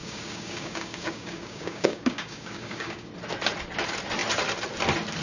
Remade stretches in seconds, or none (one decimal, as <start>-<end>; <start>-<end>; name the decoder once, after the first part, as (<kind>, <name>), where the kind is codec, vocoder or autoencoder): 0.0-3.1 (codec, DAC)